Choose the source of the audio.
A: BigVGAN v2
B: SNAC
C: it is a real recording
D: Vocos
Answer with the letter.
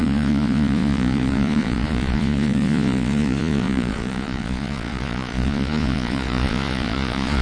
D